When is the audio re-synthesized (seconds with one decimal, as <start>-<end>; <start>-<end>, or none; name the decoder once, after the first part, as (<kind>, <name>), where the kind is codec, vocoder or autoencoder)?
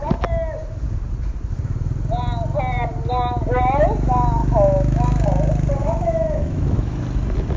4.4-5.2 (autoencoder, DAC-VAE); 5.8-7.0